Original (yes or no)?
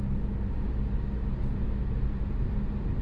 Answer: yes